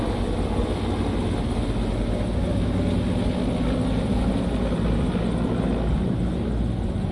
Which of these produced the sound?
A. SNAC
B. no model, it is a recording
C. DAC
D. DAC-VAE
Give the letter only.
B